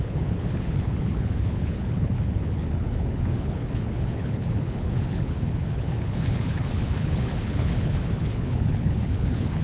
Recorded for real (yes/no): no